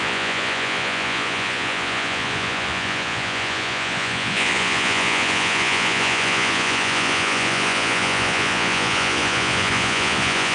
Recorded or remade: remade